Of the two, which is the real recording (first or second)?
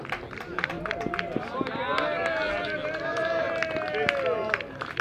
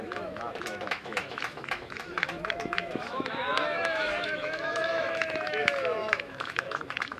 first